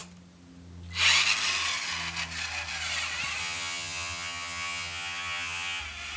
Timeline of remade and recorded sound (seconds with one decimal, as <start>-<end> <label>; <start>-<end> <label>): 0.0-3.4 recorded; 3.4-5.8 remade; 5.8-6.2 recorded